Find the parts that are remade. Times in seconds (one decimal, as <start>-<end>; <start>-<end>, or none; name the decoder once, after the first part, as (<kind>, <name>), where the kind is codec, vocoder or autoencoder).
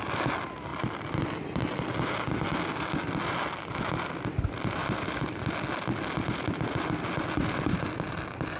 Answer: 4.8-5.5 (vocoder, BigVGAN v2)